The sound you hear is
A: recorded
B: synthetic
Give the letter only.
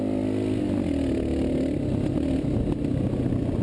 A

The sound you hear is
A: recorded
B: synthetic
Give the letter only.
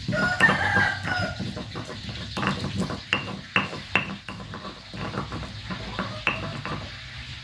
A